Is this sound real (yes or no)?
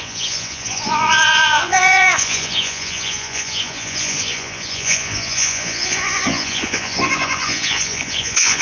no